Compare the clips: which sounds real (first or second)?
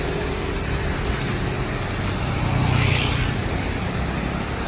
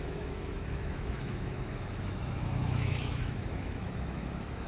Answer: first